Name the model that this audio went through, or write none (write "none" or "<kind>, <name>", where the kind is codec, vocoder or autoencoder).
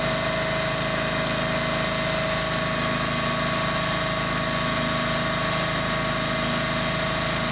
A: none